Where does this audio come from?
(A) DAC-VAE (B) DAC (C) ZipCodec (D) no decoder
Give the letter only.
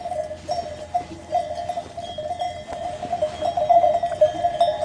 D